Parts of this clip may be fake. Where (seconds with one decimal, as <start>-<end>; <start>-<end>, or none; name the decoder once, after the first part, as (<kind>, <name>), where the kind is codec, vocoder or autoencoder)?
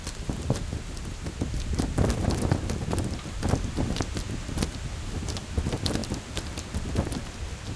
none